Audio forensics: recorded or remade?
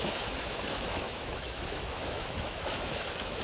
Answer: remade